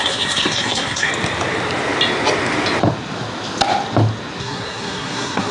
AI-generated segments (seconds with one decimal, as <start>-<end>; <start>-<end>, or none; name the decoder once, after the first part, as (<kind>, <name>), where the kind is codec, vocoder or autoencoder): 0.0-1.1 (codec, SNAC); 4.4-5.5